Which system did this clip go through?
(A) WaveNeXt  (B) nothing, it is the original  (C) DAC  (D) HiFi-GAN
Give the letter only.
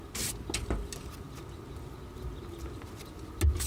B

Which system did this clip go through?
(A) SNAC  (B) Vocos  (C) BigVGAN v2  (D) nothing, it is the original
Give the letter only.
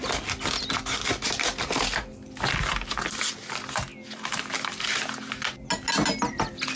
D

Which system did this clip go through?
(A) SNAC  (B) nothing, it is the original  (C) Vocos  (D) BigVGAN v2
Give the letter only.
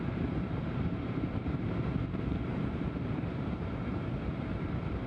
D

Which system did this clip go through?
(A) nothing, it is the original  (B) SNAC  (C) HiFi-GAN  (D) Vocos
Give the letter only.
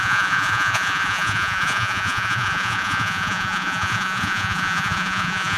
D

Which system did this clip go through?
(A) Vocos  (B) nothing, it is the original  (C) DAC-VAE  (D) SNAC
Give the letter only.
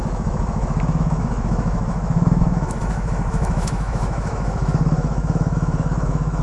C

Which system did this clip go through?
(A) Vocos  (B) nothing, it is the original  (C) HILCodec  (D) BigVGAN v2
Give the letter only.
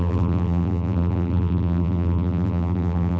D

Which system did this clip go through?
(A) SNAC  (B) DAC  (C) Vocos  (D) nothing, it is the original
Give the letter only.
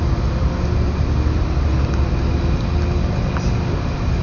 D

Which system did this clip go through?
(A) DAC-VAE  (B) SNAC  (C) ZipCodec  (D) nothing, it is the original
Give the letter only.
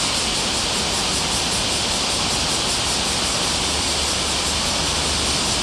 D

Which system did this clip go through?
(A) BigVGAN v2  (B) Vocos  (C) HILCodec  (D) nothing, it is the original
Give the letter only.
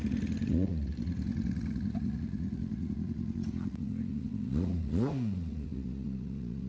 B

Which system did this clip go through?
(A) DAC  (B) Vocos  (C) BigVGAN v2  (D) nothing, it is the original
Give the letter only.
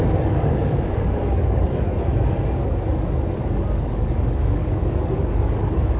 A